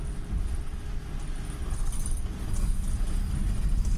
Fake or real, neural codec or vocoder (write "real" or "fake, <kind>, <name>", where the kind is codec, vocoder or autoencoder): real